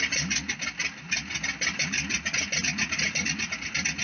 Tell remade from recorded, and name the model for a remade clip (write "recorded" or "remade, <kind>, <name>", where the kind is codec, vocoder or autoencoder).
recorded